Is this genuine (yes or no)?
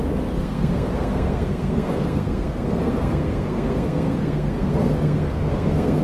no